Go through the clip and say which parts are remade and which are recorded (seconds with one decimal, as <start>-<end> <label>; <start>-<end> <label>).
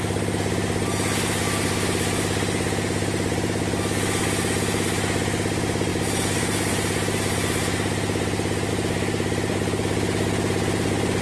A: 0.0-11.2 recorded